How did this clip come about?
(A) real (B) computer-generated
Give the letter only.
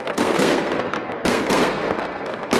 B